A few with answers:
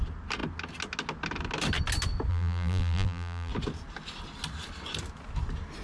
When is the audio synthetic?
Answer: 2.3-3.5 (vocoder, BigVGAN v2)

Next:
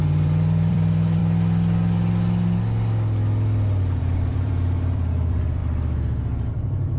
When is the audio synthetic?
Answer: 0.0-1.2 (vocoder, BigVGAN v2); 4.0-5.6; 6.5-7.0

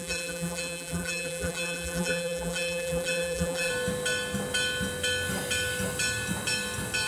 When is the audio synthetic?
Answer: 0.0-3.7 (vocoder, BigVGAN v2)

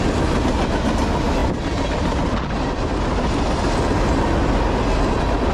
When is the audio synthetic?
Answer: none

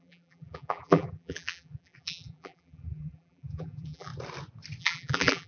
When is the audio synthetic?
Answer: 0.0-4.1 (vocoder, BigVGAN v2); 4.8-5.5

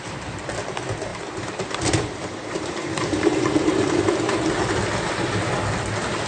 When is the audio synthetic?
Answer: 1.1-4.0 (vocoder, BigVGAN v2)